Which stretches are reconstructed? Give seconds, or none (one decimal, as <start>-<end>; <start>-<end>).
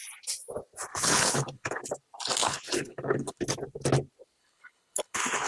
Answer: 0.9-1.8; 2.4-3.4; 4.4-5.5